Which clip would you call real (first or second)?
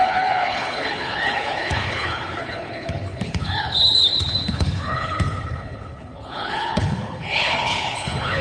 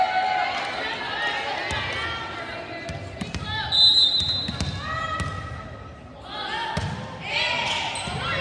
second